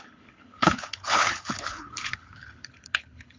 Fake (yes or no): yes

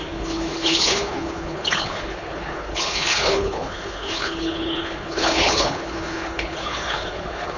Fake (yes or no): yes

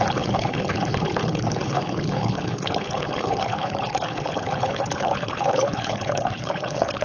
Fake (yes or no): yes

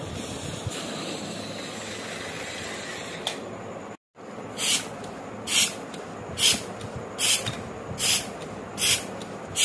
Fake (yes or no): no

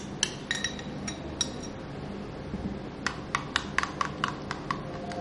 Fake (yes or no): no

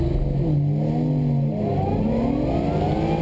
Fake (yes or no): no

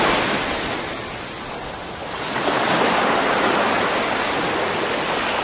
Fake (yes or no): no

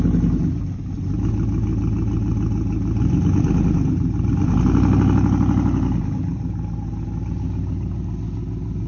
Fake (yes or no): no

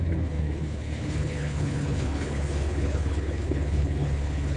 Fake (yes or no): yes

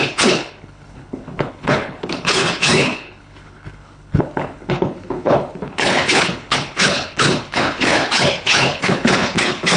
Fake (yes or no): yes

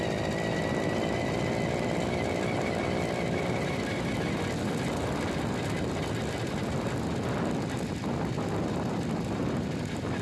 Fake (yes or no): no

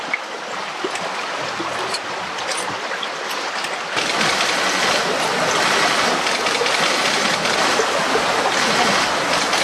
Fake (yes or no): no